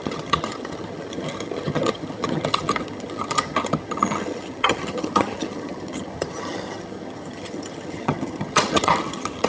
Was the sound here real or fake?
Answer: fake